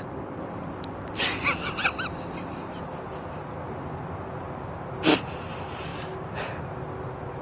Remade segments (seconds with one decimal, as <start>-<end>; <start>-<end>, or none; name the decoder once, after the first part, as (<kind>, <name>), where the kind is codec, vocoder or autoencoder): none